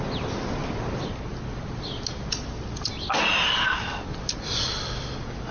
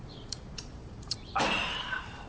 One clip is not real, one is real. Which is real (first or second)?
first